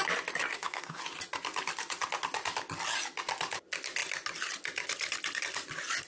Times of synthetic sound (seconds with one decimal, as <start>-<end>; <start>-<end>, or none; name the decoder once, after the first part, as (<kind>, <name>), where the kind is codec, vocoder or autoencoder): 0.5-1.0 (codec, SNAC)